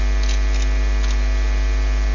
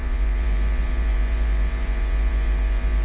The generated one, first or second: second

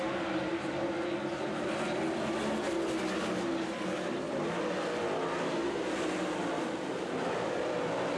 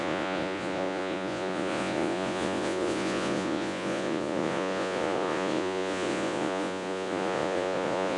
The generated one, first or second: second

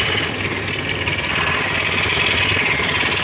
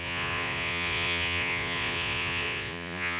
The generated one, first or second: second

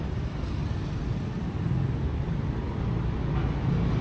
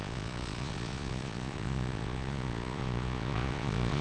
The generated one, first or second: second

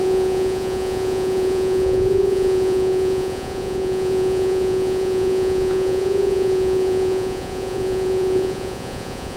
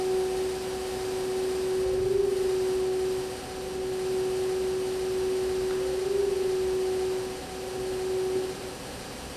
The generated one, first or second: first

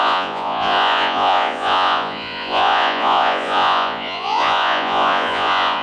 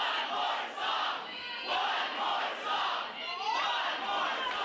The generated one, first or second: first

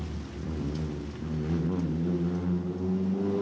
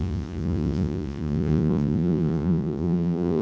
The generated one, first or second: second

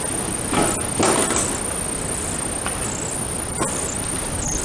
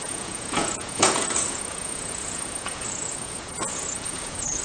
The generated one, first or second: second